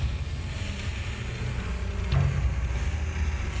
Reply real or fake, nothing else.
real